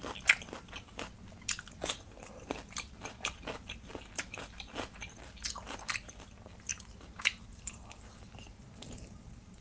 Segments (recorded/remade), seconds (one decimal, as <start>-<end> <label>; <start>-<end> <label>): 0.0-9.6 recorded